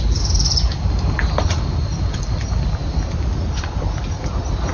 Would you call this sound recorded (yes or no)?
yes